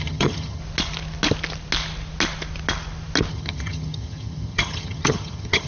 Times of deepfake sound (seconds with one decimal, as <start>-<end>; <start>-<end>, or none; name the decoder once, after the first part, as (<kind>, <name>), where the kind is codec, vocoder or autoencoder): 0.0-0.6 (vocoder, HiFi-GAN); 3.3-5.7